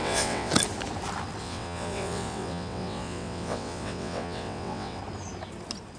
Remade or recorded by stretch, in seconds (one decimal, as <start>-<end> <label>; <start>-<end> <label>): 0.0-0.5 remade; 0.5-1.4 recorded; 1.4-5.0 remade; 5.0-6.0 recorded